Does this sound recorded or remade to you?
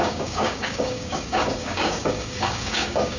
remade